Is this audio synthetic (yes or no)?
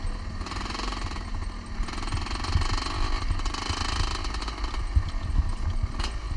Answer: no